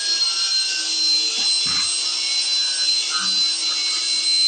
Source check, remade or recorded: recorded